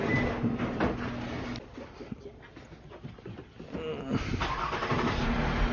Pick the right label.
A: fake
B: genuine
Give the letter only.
B